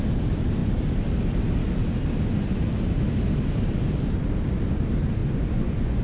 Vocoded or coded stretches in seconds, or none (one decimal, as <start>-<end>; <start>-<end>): 5.2-6.0

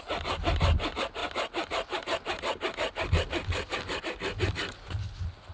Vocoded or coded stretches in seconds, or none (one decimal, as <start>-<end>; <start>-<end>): none

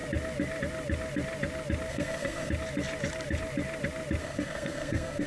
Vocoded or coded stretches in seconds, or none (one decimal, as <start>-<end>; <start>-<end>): 1.9-2.5; 4.2-5.3

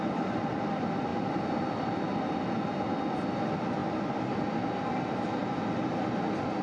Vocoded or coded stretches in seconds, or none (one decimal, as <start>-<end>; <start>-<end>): none

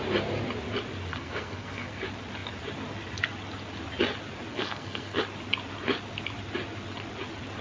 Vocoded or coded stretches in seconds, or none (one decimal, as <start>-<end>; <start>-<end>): 1.1-2.0; 4.5-5.2

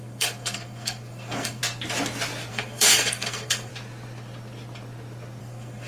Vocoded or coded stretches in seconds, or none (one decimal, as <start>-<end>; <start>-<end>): 0.0-1.6; 2.5-3.7; 5.4-5.9